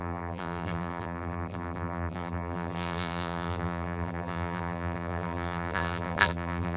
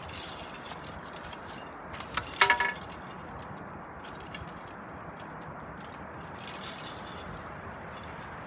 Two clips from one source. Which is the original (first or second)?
second